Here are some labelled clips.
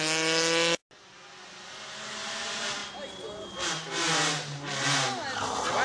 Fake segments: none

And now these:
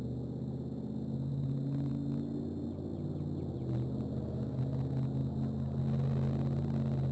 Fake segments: 1.3-1.9

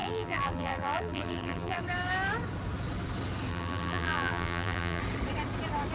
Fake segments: 0.0-1.8; 3.5-5.0